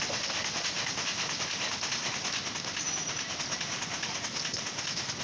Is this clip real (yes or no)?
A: yes